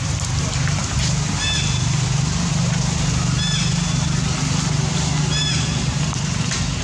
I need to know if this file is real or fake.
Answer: real